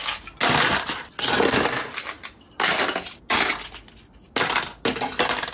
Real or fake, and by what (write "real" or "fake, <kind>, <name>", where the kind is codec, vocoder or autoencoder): real